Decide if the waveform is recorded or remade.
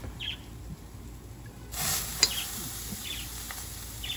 recorded